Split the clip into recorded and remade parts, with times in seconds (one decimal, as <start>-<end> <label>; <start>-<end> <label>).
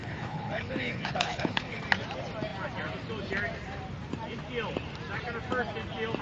0.0-1.8 remade; 1.8-6.2 recorded